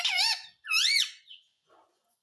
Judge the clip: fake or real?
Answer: fake